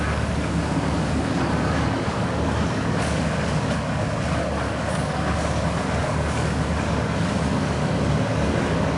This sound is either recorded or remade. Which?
remade